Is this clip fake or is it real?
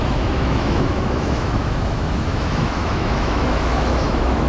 fake